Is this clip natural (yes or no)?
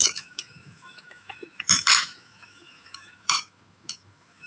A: no